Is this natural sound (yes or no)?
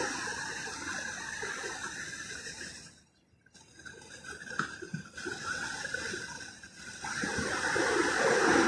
yes